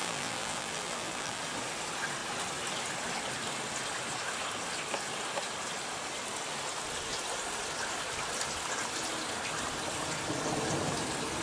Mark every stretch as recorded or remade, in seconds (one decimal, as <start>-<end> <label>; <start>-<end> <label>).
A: 0.0-1.4 remade; 1.4-11.4 recorded